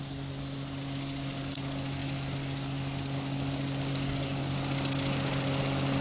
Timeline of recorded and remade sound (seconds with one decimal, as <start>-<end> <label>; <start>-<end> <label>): 0.0-6.0 recorded